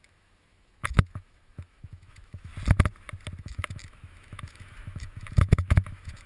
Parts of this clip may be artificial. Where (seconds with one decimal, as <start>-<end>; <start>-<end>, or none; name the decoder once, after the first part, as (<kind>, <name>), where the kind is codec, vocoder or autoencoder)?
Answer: 0.0-2.5 (autoencoder, DAC-VAE); 3.4-6.3